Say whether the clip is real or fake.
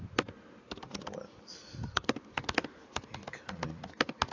real